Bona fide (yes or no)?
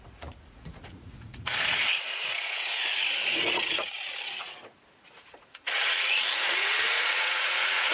no